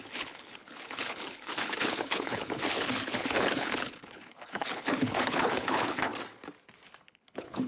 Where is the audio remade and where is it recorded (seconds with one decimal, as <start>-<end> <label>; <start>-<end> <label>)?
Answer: 0.0-6.1 remade; 6.1-6.9 recorded; 6.9-7.7 remade

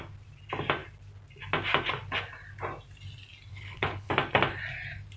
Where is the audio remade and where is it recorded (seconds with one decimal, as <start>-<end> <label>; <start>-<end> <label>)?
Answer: 0.0-3.5 recorded; 3.5-4.1 remade; 4.1-5.2 recorded

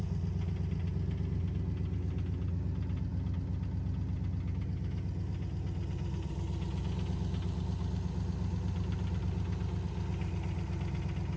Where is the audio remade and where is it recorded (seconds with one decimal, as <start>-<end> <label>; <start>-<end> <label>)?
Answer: 0.0-11.4 recorded

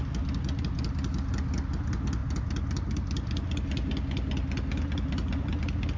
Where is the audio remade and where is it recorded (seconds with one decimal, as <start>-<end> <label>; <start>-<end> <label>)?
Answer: 0.0-6.0 recorded

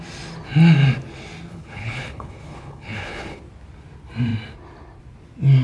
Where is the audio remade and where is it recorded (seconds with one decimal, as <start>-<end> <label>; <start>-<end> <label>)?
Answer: 0.0-1.5 recorded; 1.5-3.4 remade; 3.4-5.6 recorded

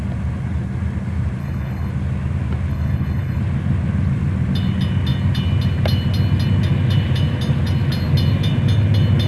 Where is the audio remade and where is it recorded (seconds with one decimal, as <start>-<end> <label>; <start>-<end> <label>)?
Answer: 0.0-1.4 recorded; 1.4-1.9 remade; 1.9-2.7 recorded; 2.7-3.4 remade; 3.4-9.3 recorded